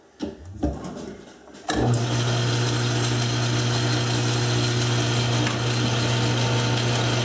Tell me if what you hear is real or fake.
real